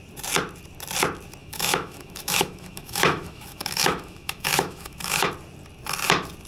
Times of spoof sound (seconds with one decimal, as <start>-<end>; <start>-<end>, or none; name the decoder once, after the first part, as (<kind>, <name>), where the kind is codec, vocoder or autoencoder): 1.4-5.3 (autoencoder, DAC-VAE)